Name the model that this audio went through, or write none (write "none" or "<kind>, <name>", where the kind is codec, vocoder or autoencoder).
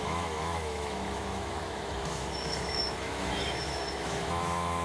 autoencoder, DAC-VAE